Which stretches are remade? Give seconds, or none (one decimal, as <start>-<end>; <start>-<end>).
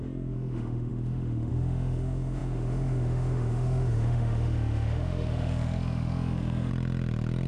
0.0-6.7